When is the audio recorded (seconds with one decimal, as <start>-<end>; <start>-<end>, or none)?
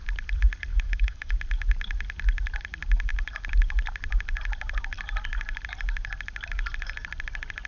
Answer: 0.0-0.7; 1.3-7.7